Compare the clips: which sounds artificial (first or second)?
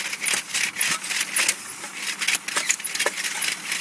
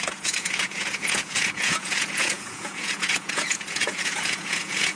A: second